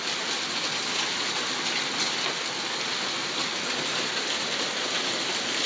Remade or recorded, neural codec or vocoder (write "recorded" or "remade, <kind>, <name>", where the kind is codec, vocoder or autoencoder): recorded